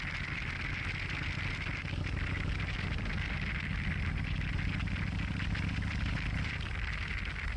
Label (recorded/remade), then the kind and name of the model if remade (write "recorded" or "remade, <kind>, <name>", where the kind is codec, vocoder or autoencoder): recorded